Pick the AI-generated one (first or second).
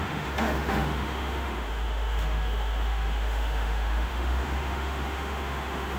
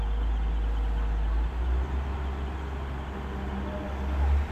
first